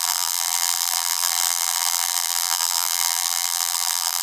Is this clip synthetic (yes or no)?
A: yes